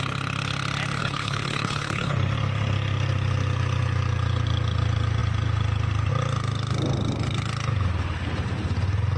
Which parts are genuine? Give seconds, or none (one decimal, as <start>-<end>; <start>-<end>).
0.0-1.0; 2.1-9.2